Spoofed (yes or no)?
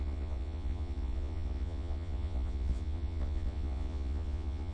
yes